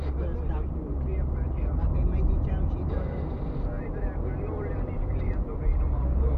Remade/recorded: remade